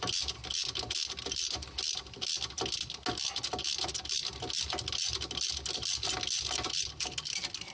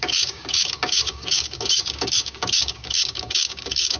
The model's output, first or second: second